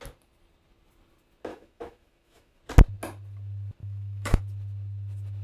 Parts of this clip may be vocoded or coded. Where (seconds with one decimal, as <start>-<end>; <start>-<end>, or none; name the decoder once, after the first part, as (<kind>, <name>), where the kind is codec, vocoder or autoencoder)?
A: 1.5-2.6 (autoencoder, DAC-VAE); 3.8-4.4